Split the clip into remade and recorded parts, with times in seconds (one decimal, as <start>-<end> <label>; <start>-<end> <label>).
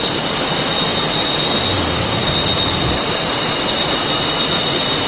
0.0-5.1 recorded